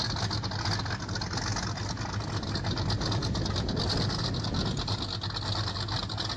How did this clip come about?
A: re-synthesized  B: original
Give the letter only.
B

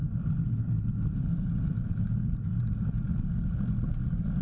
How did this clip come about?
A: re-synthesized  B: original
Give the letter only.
B